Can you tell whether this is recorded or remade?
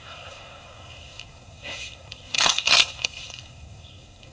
remade